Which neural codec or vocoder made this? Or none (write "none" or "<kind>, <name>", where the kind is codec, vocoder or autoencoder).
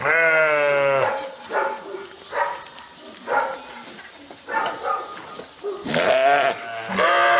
none